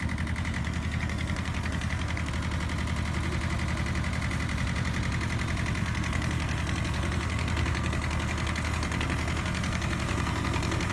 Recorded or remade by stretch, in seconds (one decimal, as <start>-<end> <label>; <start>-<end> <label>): 0.0-0.6 recorded; 0.6-2.3 remade; 2.3-5.8 recorded; 5.8-10.9 remade